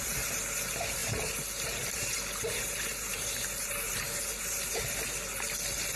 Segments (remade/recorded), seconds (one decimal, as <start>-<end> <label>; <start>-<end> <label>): 0.0-1.0 recorded; 1.0-4.6 remade; 4.6-6.0 recorded